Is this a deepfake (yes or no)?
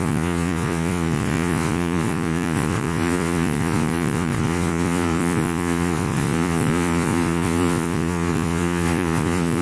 yes